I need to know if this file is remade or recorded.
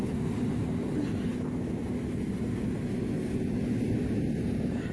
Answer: recorded